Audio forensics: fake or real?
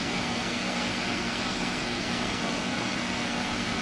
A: fake